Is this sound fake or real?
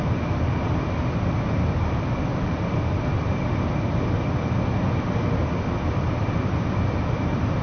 real